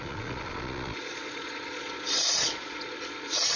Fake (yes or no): yes